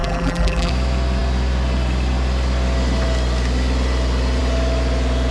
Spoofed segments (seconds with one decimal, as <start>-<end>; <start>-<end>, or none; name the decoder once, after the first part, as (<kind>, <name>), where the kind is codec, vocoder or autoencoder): 0.0-0.7 (vocoder, BigVGAN v2)

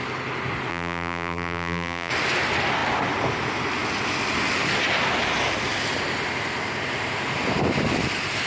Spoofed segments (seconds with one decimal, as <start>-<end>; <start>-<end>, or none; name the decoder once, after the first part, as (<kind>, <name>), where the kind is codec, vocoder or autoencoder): 0.7-2.1 (vocoder, BigVGAN v2)

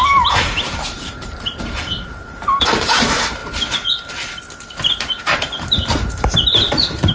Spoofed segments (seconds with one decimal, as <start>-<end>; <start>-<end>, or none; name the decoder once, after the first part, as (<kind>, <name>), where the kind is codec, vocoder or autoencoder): 0.0-3.4 (vocoder, BigVGAN v2); 5.2-7.1